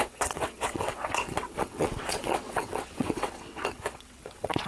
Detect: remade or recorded remade